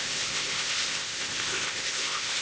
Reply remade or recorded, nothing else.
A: remade